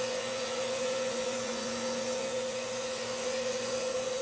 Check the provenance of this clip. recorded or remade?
remade